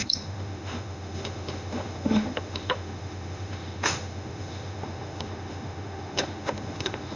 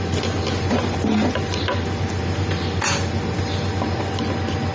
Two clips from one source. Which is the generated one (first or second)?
first